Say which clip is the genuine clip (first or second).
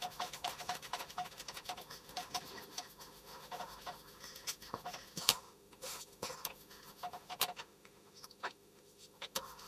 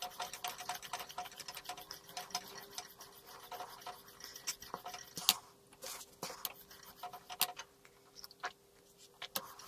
second